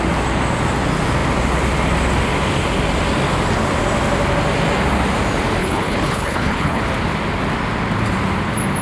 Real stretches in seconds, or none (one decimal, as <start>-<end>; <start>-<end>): 0.0-5.6; 6.8-8.8